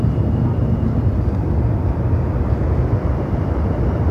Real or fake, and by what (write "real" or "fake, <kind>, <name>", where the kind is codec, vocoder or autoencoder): real